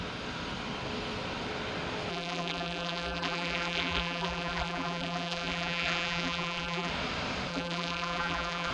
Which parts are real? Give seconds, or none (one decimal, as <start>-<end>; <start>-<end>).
0.0-2.1; 6.9-7.5